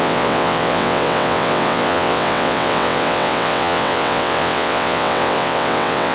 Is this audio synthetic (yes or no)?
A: yes